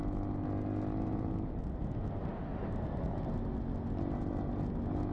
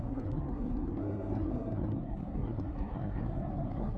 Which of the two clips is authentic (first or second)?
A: first